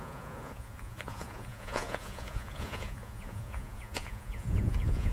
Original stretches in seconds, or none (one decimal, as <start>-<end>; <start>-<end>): none